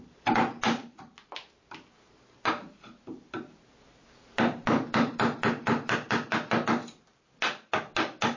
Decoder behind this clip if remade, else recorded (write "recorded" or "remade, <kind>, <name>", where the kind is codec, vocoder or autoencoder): recorded